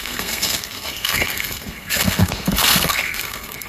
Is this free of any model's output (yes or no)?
no